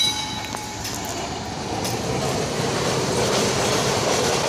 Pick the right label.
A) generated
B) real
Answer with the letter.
A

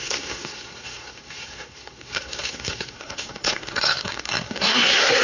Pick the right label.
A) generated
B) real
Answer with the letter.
A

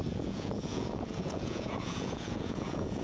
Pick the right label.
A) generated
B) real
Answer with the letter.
A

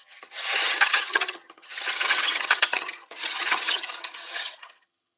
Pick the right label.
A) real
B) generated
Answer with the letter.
B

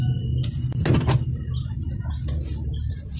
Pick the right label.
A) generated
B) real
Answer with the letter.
B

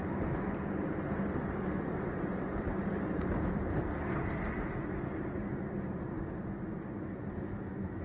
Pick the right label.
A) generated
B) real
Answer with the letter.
B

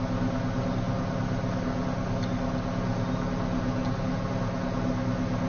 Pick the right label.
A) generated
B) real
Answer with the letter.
B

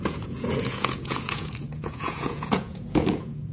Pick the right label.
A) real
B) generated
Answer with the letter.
B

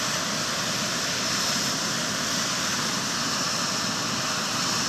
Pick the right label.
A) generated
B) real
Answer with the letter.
B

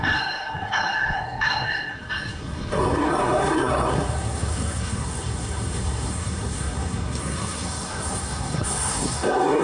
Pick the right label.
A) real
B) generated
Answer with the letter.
B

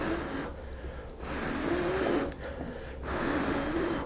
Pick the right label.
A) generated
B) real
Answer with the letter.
B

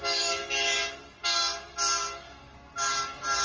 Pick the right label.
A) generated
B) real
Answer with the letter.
B